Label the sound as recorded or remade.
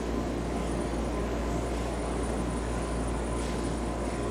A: remade